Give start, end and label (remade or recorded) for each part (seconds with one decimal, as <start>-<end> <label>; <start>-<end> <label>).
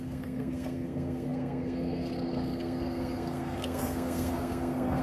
0.0-5.0 remade